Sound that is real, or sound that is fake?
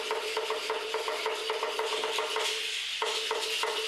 real